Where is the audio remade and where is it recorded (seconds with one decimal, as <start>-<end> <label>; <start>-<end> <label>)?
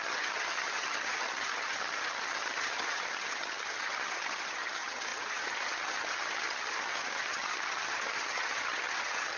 0.0-9.4 remade